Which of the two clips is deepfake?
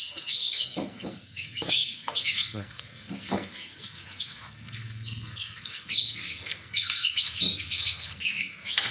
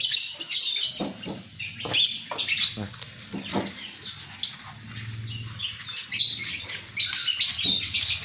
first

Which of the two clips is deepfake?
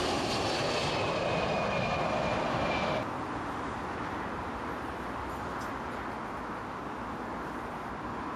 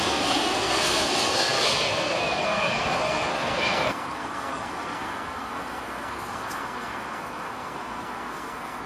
second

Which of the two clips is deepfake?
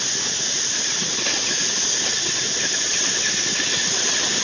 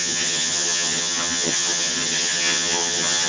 second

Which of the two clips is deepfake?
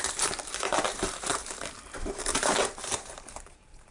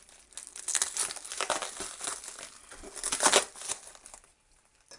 first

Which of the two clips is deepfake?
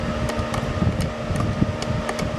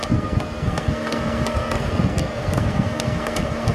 second